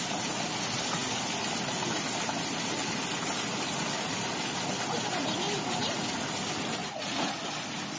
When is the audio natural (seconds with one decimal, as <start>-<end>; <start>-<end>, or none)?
0.0-6.8; 7.4-8.0